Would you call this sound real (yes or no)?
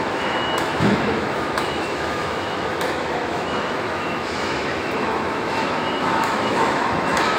no